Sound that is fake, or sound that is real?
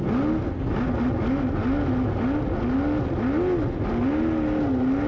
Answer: real